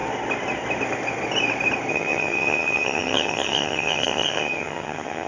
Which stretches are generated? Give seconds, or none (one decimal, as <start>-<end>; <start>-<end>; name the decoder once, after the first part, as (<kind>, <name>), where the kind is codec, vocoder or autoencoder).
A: 1.9-5.3 (vocoder, HiFi-GAN)